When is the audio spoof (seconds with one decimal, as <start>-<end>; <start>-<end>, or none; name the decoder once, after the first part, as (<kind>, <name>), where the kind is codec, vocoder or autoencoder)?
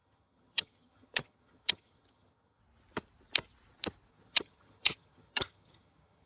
0.0-2.6 (vocoder, HiFi-GAN); 4.1-6.3